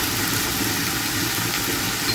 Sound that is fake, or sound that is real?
real